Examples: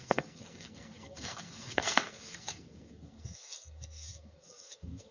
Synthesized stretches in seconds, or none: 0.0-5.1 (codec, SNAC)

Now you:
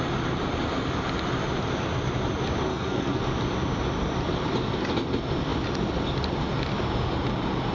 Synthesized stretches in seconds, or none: 2.7-3.2 (codec, SNAC)

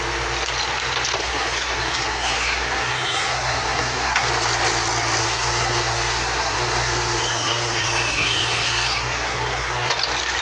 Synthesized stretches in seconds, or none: 1.2-4.3 (codec, SNAC); 5.2-9.9

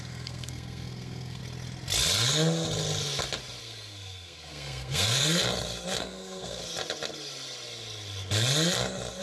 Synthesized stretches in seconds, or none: 0.0-1.4 (codec, SNAC); 3.6-5.2; 6.0-6.6

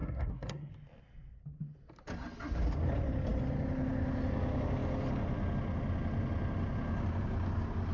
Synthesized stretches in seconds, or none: 0.0-0.7 (codec, SNAC)